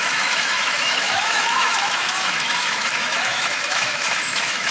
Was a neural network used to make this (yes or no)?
yes